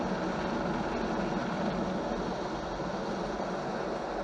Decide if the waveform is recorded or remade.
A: recorded